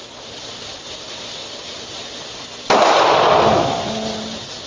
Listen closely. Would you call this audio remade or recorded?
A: recorded